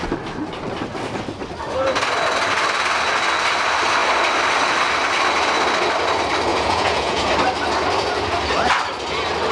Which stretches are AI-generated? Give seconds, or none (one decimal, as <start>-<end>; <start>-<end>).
6.5-7.3